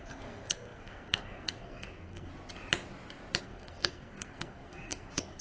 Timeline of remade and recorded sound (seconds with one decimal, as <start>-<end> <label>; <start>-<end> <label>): 0.0-2.3 remade; 2.3-3.4 recorded; 3.4-5.4 remade